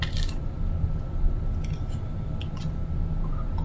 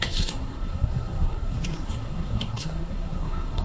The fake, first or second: second